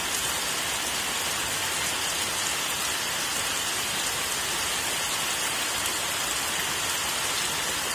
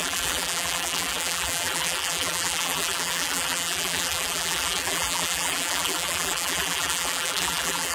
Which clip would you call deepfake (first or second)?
second